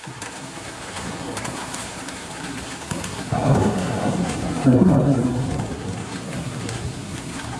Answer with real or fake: fake